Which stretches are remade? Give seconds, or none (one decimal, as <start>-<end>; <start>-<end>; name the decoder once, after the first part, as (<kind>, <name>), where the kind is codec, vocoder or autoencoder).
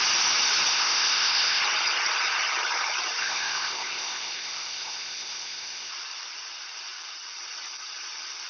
0.7-1.6 (codec, ZipCodec); 3.2-5.9